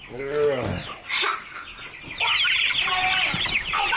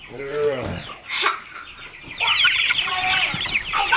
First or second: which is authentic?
first